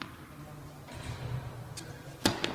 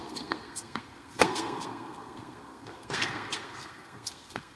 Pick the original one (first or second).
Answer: first